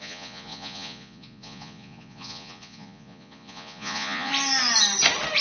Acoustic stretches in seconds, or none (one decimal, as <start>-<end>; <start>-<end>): 4.3-5.4